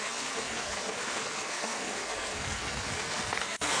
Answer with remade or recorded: remade